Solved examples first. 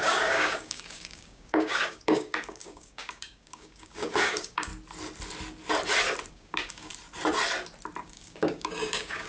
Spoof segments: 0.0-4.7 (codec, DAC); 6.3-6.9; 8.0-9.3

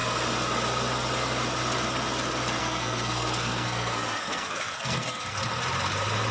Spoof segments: 2.6-5.4 (codec, SNAC)

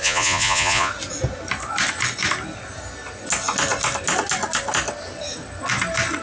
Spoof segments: 0.0-0.9 (vocoder, Vocos)

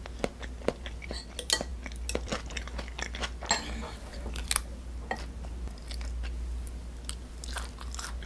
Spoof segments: none

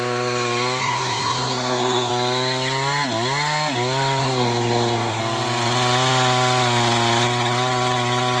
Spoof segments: 0.8-2.1 (codec, SNAC); 4.2-5.2

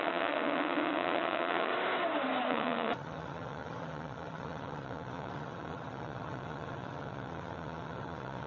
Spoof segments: 0.0-1.7 (vocoder, WaveNeXt); 2.5-8.5

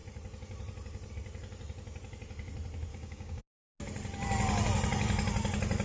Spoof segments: 2.9-3.4 (codec, DAC)

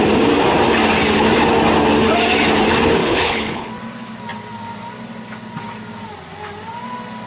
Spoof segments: 3.0-3.7 (codec, HILCodec)